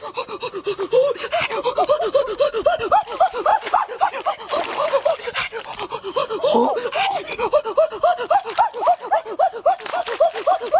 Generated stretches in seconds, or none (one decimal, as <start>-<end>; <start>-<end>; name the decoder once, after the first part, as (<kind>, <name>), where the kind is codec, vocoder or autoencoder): 3.5-4.1 (vocoder, Vocos); 6.9-7.6